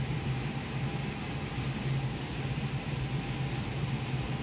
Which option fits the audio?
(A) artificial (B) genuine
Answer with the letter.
B